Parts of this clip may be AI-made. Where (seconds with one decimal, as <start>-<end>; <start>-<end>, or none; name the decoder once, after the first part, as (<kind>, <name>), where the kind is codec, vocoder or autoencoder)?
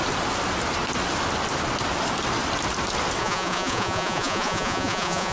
3.2-5.3 (vocoder, Vocos)